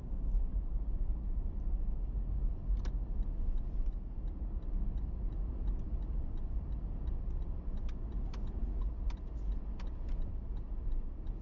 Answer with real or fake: real